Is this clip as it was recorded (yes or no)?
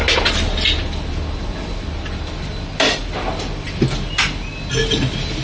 yes